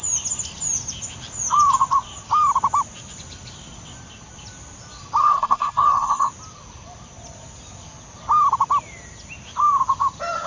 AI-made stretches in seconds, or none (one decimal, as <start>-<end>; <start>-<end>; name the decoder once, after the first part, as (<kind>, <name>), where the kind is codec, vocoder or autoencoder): 5.2-6.3 (codec, SNAC)